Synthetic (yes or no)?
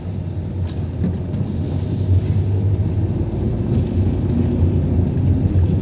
no